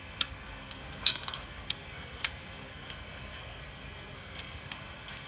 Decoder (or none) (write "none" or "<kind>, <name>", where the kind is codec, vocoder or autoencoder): codec, SNAC